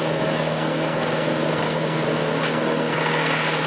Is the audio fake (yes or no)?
yes